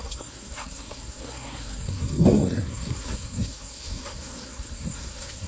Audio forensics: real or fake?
fake